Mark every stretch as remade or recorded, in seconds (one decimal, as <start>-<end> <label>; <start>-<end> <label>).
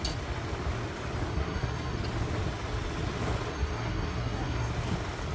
0.0-1.3 recorded; 1.3-2.0 remade; 2.0-3.5 recorded; 3.5-4.7 remade; 4.7-5.3 recorded